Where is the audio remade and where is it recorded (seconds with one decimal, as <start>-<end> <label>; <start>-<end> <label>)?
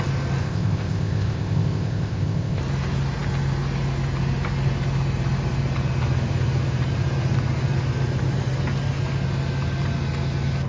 0.0-0.4 recorded; 0.4-2.6 remade; 2.6-10.7 recorded